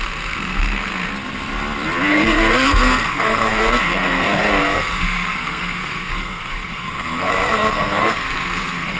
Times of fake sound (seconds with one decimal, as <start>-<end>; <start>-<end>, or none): 0.0-1.1; 2.1-9.0